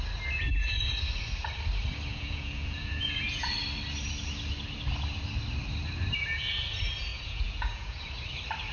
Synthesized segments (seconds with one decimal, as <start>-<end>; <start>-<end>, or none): 2.1-3.5; 7.1-8.0